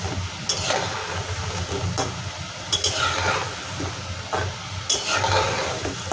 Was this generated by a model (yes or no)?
no